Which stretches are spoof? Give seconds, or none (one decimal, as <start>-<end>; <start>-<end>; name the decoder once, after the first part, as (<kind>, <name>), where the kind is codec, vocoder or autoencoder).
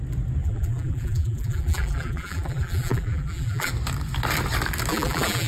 0.4-3.7 (vocoder, BigVGAN v2); 4.9-5.5